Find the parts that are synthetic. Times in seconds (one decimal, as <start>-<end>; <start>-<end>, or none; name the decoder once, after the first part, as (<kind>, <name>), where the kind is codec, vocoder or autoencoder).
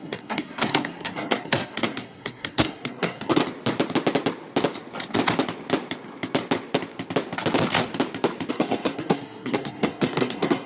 0.0-3.4 (codec, SNAC); 8.5-10.7